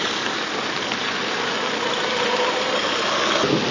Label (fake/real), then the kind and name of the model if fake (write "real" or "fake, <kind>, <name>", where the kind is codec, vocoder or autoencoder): real